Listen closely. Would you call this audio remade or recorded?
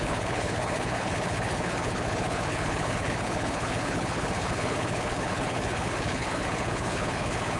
remade